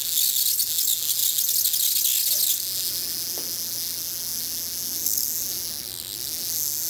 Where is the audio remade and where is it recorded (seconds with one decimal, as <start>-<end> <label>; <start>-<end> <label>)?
0.0-6.9 recorded